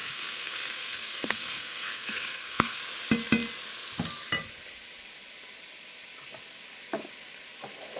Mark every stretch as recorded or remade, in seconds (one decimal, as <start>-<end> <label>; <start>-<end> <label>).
0.0-2.8 remade; 2.8-8.0 recorded